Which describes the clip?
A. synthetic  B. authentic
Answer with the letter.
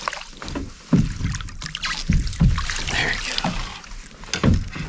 B